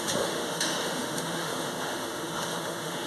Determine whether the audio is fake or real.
fake